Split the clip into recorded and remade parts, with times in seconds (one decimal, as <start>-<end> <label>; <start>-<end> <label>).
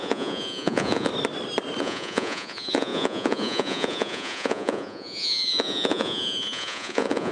0.0-1.1 remade; 1.1-1.8 recorded; 1.8-7.3 remade